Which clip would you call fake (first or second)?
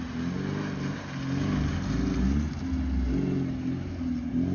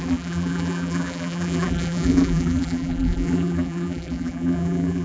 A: second